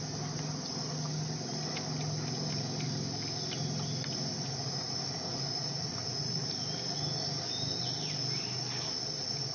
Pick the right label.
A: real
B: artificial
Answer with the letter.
A